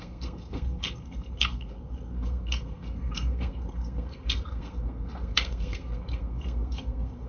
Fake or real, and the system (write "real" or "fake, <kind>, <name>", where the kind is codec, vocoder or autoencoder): fake, codec, SNAC